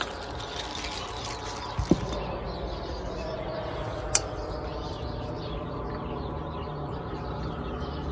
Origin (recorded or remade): recorded